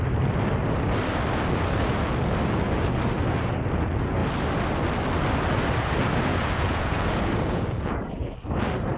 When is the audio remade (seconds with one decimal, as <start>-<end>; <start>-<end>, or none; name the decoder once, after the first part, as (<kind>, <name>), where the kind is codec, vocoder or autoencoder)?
6.3-8.3 (vocoder, Vocos)